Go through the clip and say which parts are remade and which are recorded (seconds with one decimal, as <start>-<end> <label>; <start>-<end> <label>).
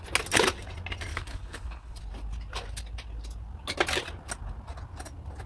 0.0-1.1 recorded; 1.1-2.0 remade; 2.0-5.5 recorded